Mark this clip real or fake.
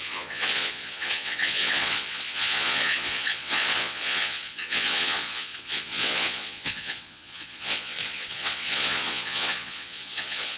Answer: fake